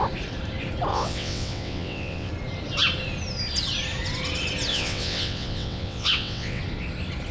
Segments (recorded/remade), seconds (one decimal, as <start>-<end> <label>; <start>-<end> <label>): 0.0-0.9 recorded; 0.9-2.3 remade; 2.3-4.7 recorded; 4.7-6.6 remade; 6.6-7.3 recorded